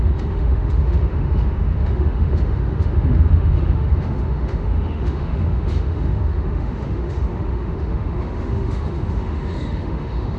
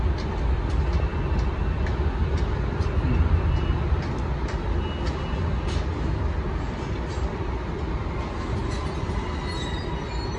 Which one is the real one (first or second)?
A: second